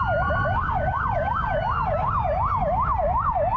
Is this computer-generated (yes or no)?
no